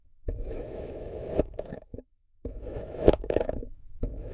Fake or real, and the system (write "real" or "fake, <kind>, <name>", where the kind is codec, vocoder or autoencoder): fake, autoencoder, DAC-VAE